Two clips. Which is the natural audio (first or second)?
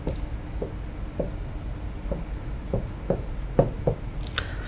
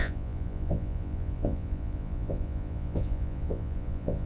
first